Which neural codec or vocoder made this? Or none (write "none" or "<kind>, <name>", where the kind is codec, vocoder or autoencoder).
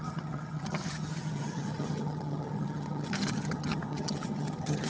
vocoder, HiFi-GAN